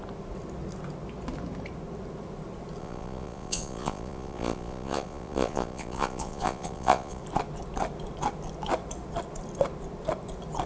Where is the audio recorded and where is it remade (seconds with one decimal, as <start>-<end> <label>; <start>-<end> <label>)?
0.0-2.8 recorded; 2.8-7.2 remade; 7.2-10.7 recorded